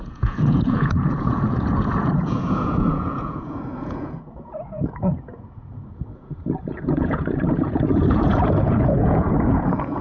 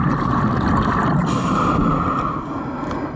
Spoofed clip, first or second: first